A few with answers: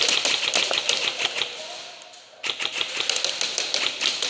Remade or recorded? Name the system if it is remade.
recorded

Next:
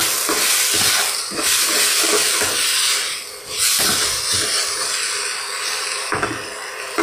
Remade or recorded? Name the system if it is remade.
recorded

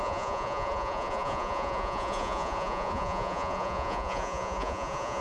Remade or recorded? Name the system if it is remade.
remade, vocoder, Vocos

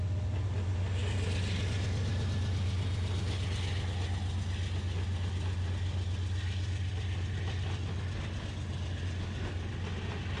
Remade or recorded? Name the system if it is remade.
recorded